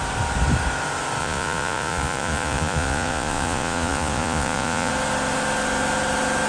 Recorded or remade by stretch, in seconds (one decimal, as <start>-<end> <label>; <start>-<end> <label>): 0.0-1.2 recorded; 1.2-4.9 remade; 4.9-6.5 recorded